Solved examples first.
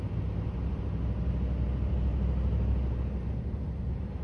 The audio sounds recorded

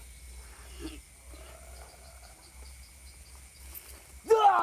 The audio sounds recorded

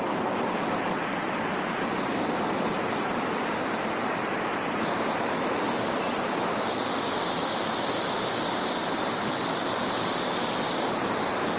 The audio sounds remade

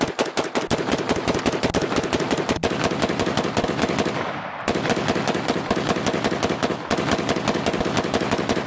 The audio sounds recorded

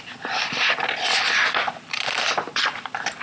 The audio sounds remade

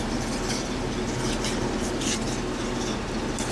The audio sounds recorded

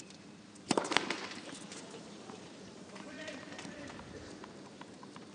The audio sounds remade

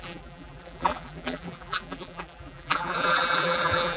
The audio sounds remade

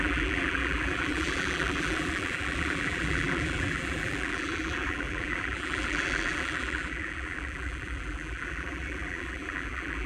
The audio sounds remade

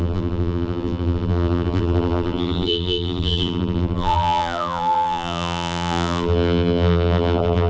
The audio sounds remade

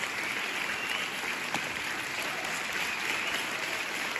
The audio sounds recorded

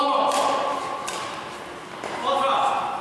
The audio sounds recorded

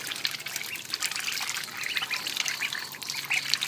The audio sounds recorded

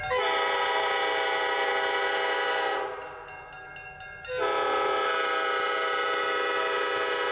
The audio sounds recorded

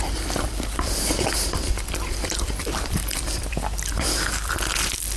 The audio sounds remade